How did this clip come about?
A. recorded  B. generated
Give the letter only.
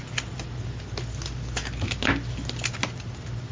A